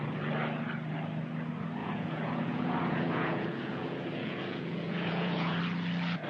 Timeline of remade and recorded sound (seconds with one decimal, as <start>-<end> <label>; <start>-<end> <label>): 0.0-1.8 recorded; 1.8-5.6 remade; 5.6-6.3 recorded